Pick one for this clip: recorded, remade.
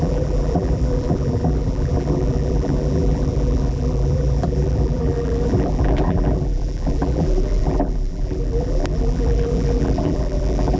remade